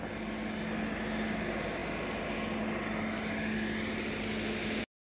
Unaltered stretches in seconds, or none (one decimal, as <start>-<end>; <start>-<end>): 0.0-5.2